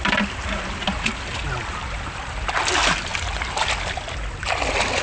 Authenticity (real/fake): real